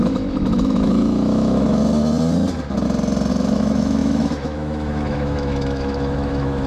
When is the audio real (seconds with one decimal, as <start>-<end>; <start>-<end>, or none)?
1.8-3.3